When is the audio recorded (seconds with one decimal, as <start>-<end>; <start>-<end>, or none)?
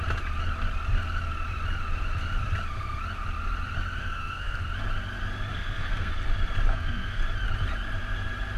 0.0-4.0; 4.6-5.5; 6.1-6.7; 7.2-8.6